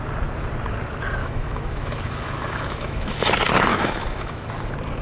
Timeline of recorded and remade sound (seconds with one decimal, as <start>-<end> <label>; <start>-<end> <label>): 0.0-1.2 recorded; 1.2-3.2 remade; 3.2-3.7 recorded; 3.7-4.5 remade; 4.5-5.0 recorded